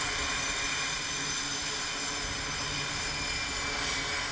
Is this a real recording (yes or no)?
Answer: yes